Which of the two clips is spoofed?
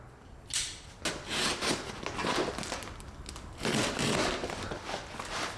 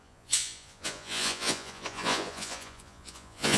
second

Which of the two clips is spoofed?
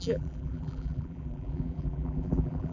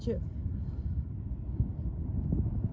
first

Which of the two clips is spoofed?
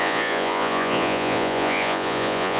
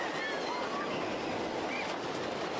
first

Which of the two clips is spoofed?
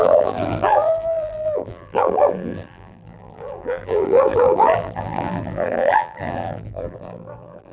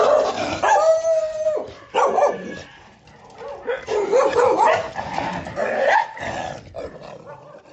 first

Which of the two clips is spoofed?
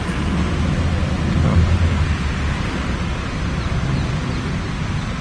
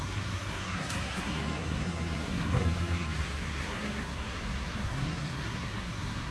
second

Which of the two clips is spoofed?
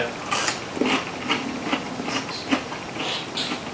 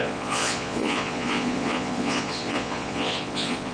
second